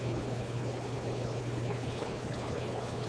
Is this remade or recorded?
remade